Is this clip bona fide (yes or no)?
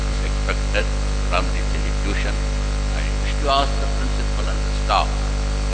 yes